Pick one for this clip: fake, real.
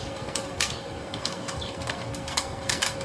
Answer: fake